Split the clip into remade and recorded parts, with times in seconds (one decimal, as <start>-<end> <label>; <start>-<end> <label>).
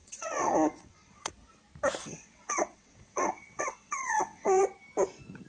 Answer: 0.0-1.3 remade; 1.3-2.0 recorded; 2.0-4.6 remade; 4.6-5.5 recorded